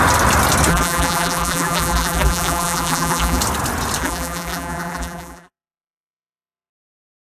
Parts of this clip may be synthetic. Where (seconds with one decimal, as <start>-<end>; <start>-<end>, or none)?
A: 0.7-3.4; 4.0-6.7